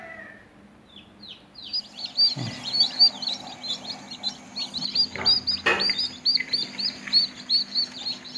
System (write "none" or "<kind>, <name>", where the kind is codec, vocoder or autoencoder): none